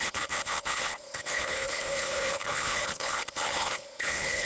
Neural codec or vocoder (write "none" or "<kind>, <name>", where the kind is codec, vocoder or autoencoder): codec, HILCodec